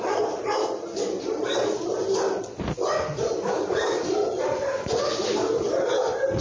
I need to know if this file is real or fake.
real